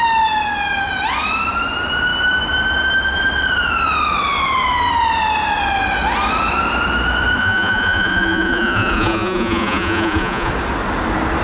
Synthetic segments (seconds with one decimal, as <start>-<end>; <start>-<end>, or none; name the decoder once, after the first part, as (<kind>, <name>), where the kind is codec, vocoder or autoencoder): 7.4-10.5 (vocoder, Vocos)